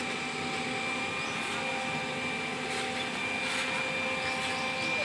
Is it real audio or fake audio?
real